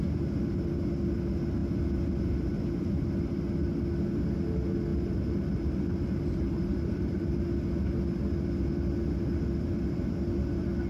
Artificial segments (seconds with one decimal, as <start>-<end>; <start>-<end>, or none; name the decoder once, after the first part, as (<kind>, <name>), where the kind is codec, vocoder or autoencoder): 4.9-7.4 (vocoder, BigVGAN v2)

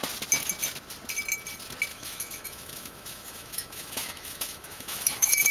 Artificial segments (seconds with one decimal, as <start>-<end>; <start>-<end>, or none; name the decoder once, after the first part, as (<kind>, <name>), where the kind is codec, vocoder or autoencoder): 1.9-5.5 (autoencoder, DAC-VAE)

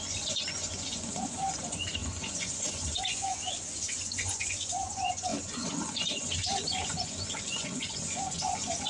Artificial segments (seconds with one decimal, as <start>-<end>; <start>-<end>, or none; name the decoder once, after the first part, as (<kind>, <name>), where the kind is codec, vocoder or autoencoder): 0.0-8.9 (vocoder, Vocos)

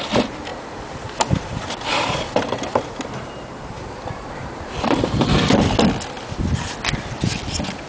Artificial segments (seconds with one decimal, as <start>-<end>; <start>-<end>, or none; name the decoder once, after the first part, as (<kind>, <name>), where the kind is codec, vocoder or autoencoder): 0.5-5.2 (vocoder, BigVGAN v2)

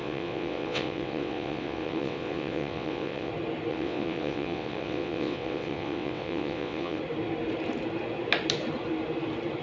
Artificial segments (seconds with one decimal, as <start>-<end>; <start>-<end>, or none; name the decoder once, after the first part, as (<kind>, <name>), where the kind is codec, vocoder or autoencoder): 0.0-3.3 (vocoder, WaveNeXt); 3.7-7.0

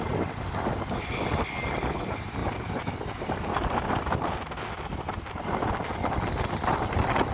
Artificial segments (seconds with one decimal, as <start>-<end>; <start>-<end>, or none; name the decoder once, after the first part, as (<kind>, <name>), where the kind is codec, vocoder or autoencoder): none

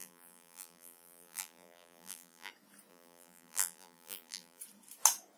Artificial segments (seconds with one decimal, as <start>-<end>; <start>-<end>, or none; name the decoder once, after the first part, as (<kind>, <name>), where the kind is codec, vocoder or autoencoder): 0.0-2.5 (vocoder, BigVGAN v2); 2.9-4.6